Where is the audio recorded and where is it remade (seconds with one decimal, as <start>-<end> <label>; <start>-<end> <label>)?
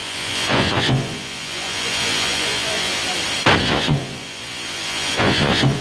0.0-3.0 remade; 3.0-3.6 recorded; 3.6-5.8 remade